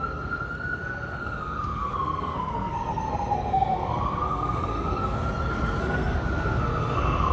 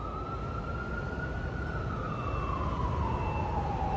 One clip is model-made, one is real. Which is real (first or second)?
second